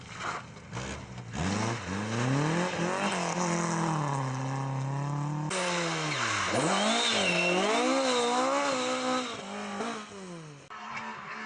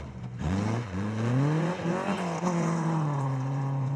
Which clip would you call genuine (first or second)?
first